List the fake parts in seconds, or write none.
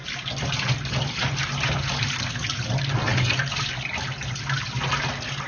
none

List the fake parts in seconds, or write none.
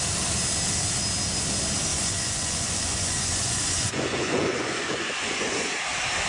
1.9-5.7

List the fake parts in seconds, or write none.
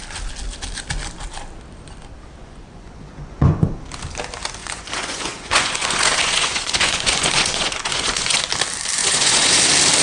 2.4-3.7; 4.6-8.4; 9.0-9.6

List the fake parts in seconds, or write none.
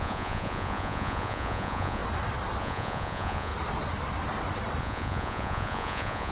0.0-2.0; 2.6-3.5; 4.8-6.3